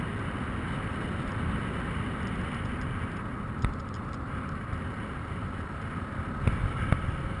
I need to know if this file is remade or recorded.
recorded